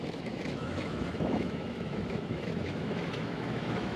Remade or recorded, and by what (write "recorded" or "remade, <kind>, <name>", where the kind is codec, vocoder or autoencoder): remade, autoencoder, DAC-VAE